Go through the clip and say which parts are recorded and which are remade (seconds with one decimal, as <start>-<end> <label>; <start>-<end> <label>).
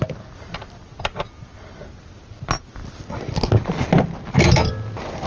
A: 0.0-5.3 recorded